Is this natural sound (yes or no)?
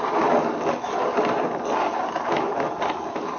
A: yes